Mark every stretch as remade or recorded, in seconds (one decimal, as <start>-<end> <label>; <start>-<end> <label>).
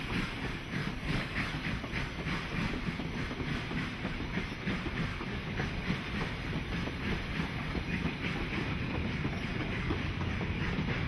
0.0-0.8 recorded; 0.8-1.8 remade; 1.8-5.1 recorded; 5.1-5.8 remade; 5.8-9.6 recorded; 9.6-10.3 remade; 10.3-11.1 recorded